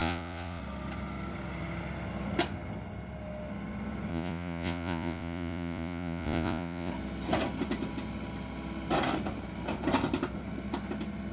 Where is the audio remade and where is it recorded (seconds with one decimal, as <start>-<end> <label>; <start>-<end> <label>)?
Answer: 0.0-0.6 remade; 0.6-4.1 recorded; 4.1-6.9 remade; 6.9-11.3 recorded